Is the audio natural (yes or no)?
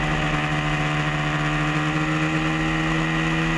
yes